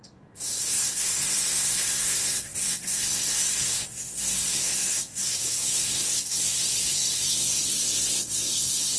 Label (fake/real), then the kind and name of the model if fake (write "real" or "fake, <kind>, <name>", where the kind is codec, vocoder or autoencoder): fake, codec, SNAC